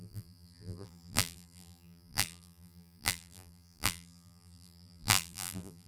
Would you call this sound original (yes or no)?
no